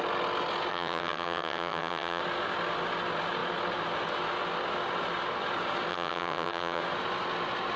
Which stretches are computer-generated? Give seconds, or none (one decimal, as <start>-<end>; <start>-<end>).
0.7-2.2; 5.9-6.8

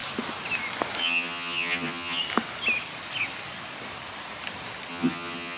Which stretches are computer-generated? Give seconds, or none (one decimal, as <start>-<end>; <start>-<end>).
1.0-2.2; 4.9-5.6

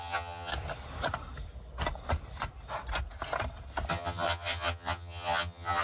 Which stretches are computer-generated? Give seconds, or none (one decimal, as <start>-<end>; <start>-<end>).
0.0-0.5; 3.9-5.8